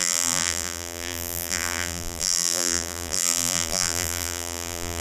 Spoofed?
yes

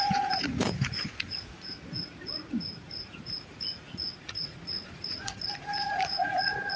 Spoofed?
yes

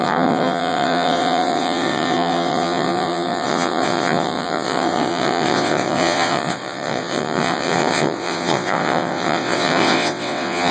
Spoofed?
yes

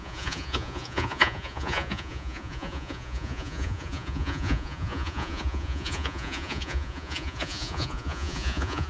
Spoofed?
yes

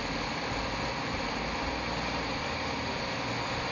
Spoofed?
no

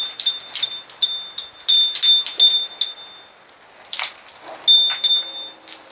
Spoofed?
no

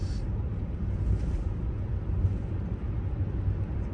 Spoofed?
no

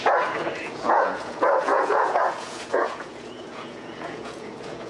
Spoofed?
yes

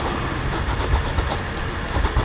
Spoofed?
no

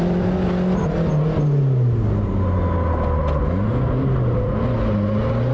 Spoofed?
no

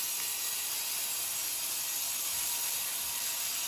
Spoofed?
no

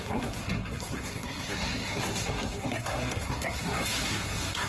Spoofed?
yes